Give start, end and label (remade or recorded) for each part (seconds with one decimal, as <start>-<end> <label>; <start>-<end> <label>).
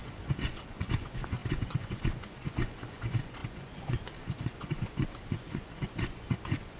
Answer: 0.0-6.8 remade